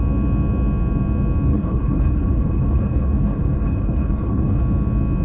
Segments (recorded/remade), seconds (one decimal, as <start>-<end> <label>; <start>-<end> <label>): 0.0-1.5 recorded; 1.5-4.6 remade; 4.6-5.2 recorded